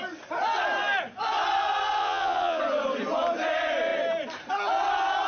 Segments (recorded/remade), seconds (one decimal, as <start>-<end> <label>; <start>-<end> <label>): 0.0-2.0 recorded; 2.0-2.6 remade; 2.6-5.3 recorded